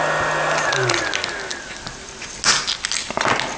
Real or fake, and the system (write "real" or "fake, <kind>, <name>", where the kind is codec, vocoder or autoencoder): real